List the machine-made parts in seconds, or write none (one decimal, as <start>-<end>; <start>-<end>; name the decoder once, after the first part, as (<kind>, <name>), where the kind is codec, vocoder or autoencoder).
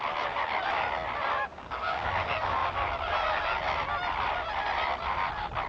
1.5-2.1 (codec, DAC)